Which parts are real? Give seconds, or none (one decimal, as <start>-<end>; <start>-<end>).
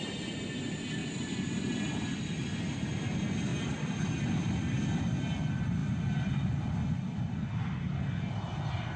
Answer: 0.0-1.0; 2.2-3.5; 4.6-5.8; 6.8-9.0